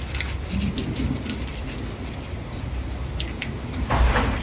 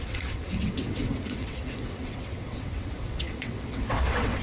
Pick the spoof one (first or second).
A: second